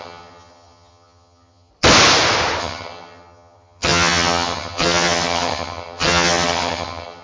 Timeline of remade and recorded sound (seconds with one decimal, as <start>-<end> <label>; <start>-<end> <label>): 0.0-1.7 remade; 1.7-2.6 recorded; 2.6-7.2 remade